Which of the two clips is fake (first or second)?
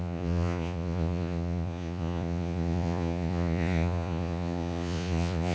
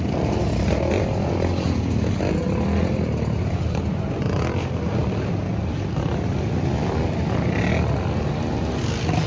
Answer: first